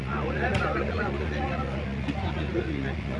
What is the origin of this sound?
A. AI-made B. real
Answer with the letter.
A